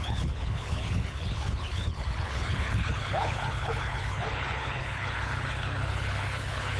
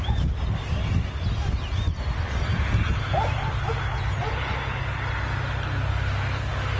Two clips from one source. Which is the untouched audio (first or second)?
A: second